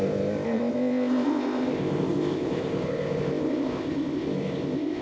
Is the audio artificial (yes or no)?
yes